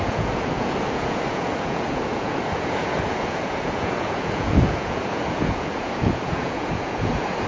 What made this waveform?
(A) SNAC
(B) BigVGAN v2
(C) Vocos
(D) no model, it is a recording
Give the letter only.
C